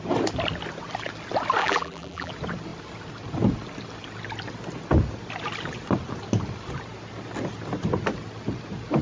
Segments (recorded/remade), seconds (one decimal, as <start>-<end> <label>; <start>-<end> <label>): 0.0-1.6 recorded; 1.6-2.3 remade; 2.3-9.0 recorded